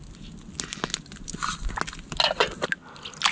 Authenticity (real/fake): real